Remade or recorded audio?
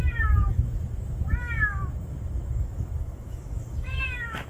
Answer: remade